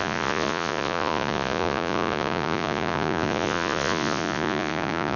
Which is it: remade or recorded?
remade